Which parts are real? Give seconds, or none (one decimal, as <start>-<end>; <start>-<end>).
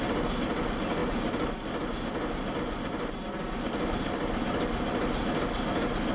0.0-6.1